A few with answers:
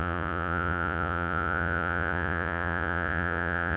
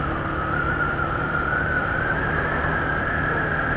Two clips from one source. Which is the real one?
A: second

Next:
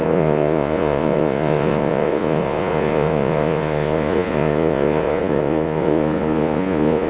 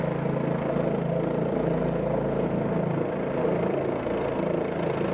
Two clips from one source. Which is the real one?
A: second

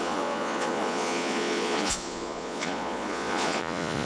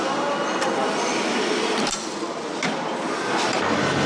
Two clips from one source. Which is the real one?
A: second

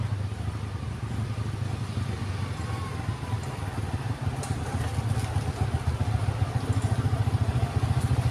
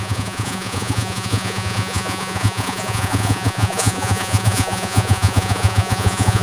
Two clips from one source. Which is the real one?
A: first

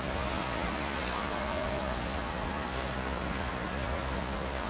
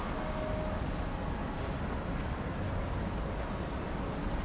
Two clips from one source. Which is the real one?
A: second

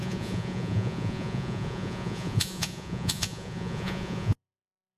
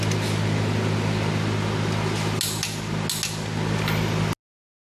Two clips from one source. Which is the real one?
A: second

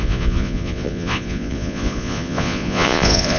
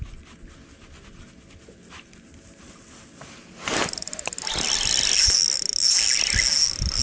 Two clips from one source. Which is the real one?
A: second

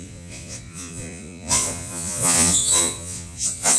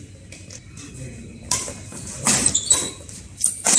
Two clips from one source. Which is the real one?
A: second